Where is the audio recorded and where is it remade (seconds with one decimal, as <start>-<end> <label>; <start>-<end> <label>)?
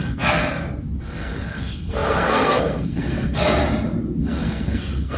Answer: 0.0-0.4 remade; 0.4-1.0 recorded; 1.0-3.6 remade; 3.6-4.2 recorded; 4.2-5.2 remade